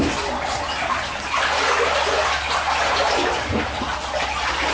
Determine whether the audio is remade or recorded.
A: recorded